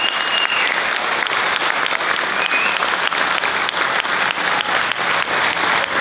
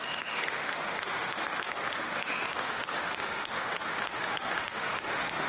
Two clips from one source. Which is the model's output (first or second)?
second